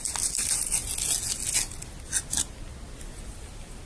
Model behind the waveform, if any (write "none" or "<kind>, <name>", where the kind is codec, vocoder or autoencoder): none